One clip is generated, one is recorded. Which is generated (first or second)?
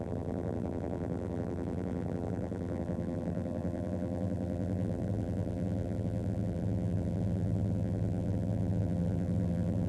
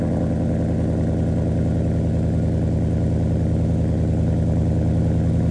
first